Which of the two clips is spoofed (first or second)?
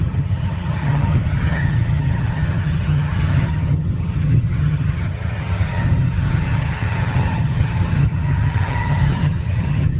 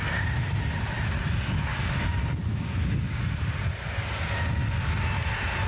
first